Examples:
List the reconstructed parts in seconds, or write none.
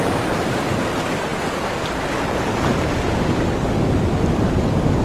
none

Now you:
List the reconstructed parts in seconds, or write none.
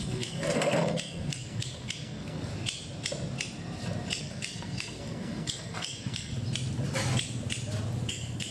0.0-2.5 (codec, SNAC); 4.2-6.3; 8.1-8.5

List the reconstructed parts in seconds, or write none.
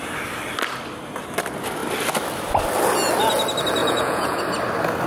3.8-4.4 (vocoder, Vocos)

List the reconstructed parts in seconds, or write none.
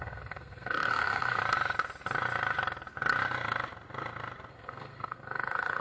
0.0-1.4 (codec, SNAC); 4.5-5.8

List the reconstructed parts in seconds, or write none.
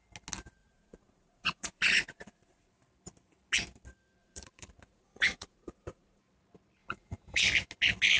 0.6-2.7 (vocoder, Vocos); 4.2-6.2; 6.8-7.4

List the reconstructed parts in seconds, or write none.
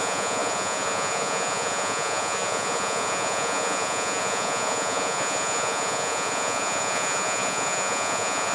0.0-8.5 (vocoder, Vocos)